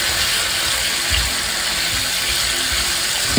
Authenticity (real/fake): real